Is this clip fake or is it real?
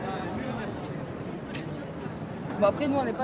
real